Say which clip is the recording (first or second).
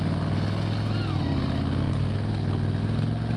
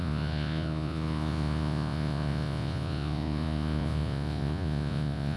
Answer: first